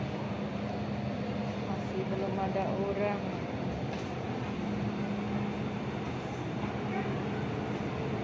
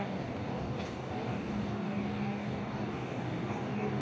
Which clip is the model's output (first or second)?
second